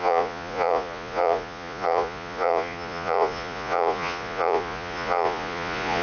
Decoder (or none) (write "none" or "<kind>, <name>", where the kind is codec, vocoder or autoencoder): vocoder, Vocos